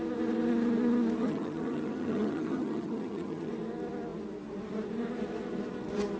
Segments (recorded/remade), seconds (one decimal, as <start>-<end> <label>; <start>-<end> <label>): 0.0-1.2 recorded; 1.2-3.5 remade; 3.5-6.2 recorded